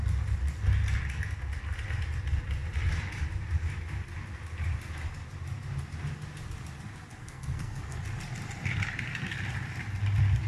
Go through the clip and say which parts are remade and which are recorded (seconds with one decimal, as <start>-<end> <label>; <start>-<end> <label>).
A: 0.0-7.2 recorded; 7.2-8.0 remade; 8.0-10.5 recorded